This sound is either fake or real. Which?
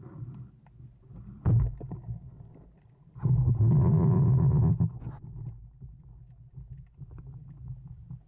real